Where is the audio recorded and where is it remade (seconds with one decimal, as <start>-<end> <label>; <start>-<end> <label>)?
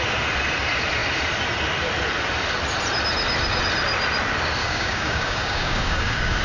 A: 0.0-4.6 recorded; 4.6-6.4 remade